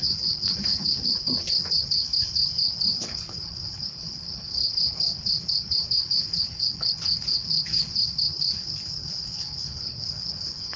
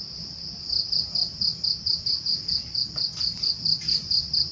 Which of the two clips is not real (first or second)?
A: first